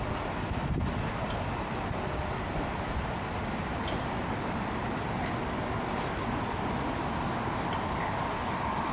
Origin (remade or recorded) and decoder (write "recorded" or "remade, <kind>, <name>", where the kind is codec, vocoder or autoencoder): recorded